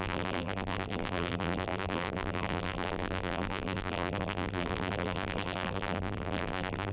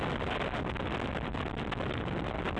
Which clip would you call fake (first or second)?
first